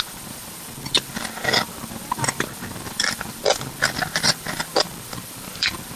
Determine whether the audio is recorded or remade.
remade